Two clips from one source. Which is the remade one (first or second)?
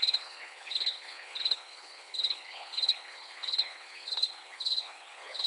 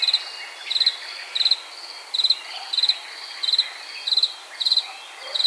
first